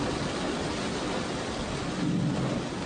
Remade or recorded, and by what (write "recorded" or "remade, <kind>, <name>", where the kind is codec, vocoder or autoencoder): recorded